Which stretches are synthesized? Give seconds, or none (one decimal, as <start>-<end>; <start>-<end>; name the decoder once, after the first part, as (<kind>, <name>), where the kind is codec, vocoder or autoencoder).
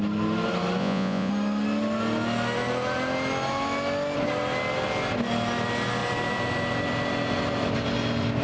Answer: 0.8-1.3 (vocoder, Vocos)